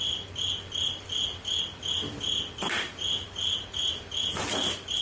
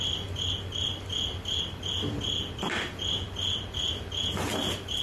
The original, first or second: first